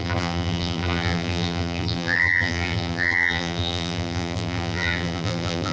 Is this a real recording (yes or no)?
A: no